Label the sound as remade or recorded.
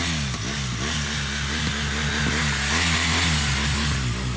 recorded